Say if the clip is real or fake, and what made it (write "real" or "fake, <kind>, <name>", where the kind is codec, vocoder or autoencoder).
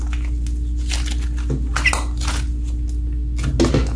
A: real